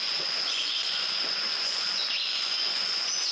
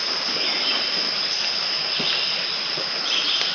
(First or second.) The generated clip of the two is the first